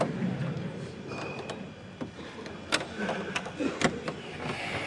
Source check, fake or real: real